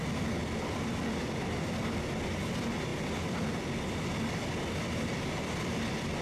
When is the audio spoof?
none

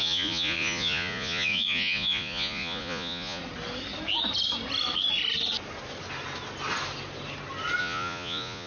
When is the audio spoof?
0.0-3.4 (vocoder, Vocos); 7.8-8.7

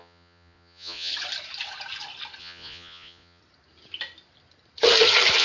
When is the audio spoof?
0.0-1.1 (vocoder, Vocos); 2.4-3.4

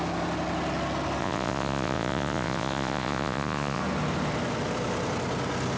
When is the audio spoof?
1.2-3.8 (vocoder, Vocos)